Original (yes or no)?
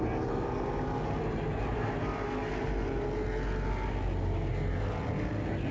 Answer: yes